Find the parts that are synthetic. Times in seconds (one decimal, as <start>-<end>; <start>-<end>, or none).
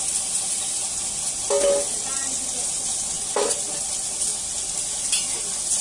none